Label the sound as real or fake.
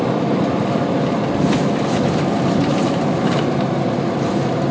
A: real